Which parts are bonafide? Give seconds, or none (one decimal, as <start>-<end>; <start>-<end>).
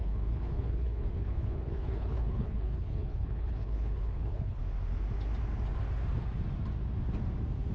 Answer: 4.6-7.7